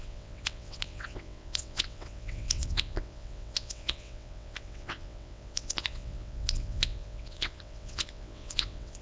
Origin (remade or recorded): remade